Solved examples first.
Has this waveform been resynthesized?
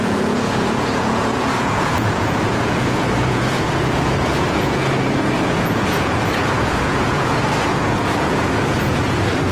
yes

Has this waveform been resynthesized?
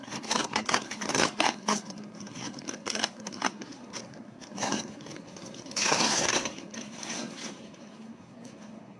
yes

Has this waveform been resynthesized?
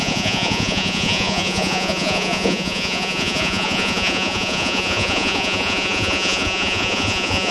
yes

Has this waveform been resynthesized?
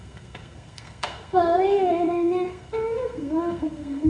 yes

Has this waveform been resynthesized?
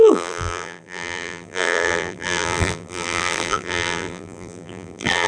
yes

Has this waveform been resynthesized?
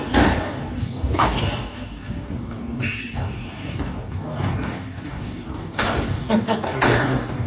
yes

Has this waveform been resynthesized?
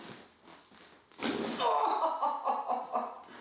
no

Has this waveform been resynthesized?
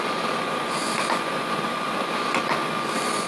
yes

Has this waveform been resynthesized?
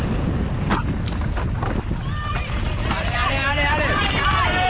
no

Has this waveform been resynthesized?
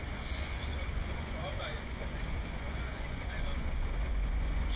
yes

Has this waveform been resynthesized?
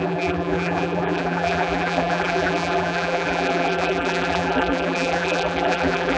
yes